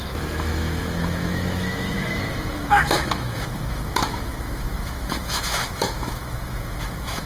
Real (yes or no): no